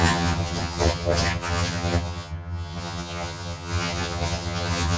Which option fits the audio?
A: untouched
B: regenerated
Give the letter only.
B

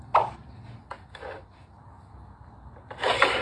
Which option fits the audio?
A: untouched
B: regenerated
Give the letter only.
A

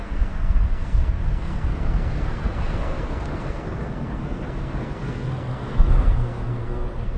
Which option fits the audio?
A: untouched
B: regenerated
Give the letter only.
B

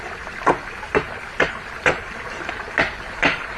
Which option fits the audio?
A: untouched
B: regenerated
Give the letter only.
A